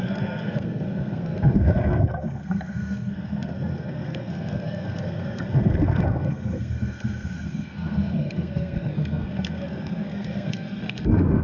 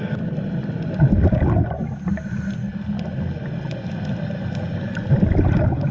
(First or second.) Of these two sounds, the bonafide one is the second